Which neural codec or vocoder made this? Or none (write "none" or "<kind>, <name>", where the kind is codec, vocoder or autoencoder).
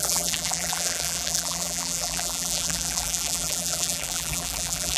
vocoder, BigVGAN v2